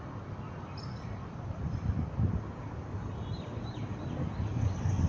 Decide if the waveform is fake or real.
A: real